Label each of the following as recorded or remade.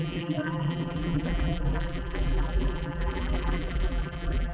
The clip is remade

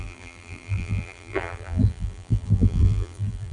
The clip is remade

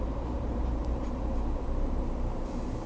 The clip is remade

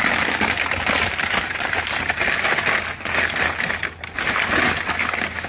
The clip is recorded